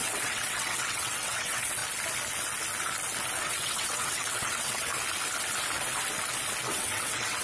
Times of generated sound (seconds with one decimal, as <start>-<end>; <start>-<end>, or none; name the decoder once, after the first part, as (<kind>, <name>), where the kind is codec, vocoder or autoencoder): 0.0-1.8 (vocoder, WaveNeXt); 3.4-4.9; 6.7-7.4

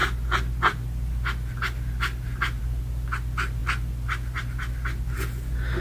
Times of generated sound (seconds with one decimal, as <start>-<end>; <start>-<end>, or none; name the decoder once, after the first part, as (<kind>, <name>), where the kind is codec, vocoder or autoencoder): none

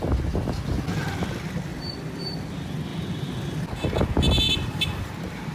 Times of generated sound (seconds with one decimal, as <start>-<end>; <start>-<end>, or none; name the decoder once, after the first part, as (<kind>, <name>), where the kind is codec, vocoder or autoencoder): 1.7-2.4 (vocoder, BigVGAN v2); 2.9-5.5

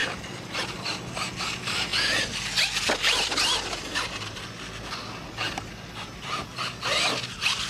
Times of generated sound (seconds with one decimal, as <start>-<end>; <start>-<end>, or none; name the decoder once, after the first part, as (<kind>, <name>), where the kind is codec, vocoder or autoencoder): none

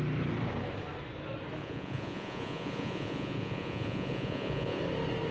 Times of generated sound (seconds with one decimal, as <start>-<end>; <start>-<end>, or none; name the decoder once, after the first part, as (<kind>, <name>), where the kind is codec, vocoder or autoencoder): 1.6-4.8 (vocoder, Vocos)

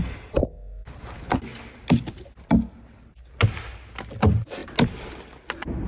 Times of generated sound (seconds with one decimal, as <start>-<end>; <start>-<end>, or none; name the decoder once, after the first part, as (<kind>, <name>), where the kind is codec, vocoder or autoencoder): none